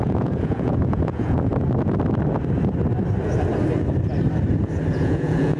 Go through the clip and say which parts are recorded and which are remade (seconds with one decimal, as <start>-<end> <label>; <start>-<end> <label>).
0.0-1.5 remade; 1.5-4.9 recorded; 4.9-5.6 remade